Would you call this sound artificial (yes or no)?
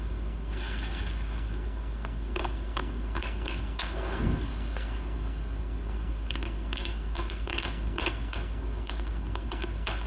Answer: yes